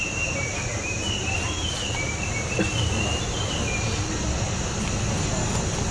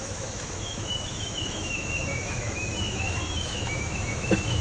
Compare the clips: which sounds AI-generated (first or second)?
second